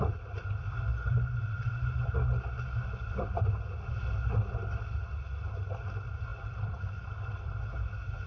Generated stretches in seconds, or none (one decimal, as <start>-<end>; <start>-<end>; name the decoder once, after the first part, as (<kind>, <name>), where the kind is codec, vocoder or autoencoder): 6.3-7.5 (vocoder, BigVGAN v2)